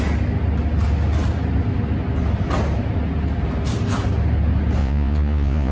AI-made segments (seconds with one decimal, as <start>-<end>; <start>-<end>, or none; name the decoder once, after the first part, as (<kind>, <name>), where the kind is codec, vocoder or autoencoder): 4.8-5.7 (vocoder, Vocos)